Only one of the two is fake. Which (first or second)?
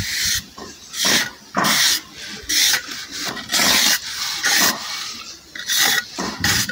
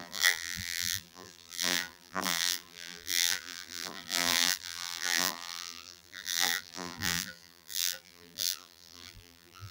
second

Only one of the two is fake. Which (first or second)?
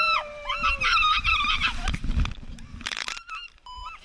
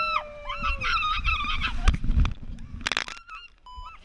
first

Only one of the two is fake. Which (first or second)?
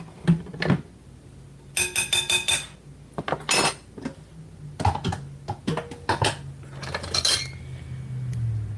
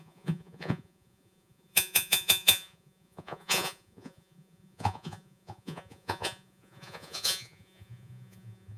second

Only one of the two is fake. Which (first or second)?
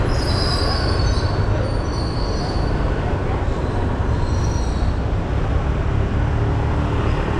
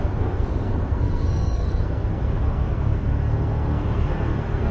second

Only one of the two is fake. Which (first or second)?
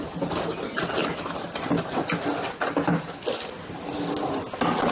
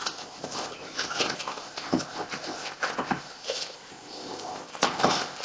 second